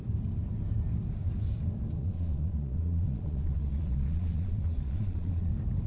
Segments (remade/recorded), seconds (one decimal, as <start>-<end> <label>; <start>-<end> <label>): 0.0-2.0 recorded; 2.0-5.5 remade; 5.5-5.9 recorded